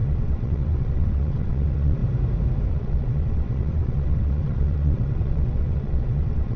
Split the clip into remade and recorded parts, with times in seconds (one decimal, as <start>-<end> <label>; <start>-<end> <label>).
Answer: 0.0-2.0 remade; 2.0-2.7 recorded; 2.7-6.6 remade